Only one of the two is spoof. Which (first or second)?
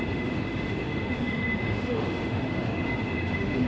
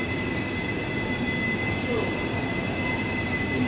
first